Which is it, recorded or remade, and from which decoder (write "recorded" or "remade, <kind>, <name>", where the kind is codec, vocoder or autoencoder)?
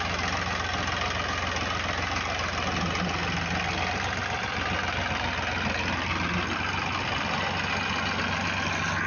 recorded